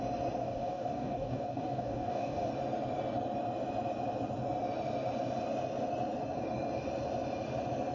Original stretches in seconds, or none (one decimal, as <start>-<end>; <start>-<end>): 0.0-0.4; 2.5-7.9